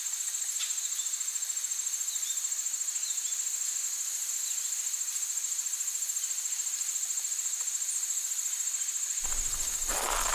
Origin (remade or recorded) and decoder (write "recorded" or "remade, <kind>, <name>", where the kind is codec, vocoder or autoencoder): recorded